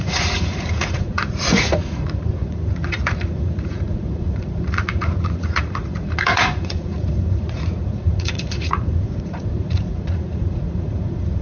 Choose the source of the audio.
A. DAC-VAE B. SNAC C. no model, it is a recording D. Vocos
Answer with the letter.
D